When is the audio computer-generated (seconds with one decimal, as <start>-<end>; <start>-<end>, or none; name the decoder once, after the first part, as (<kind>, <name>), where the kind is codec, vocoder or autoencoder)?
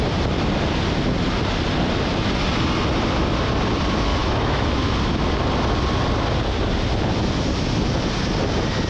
4.1-4.9 (autoencoder, DAC-VAE)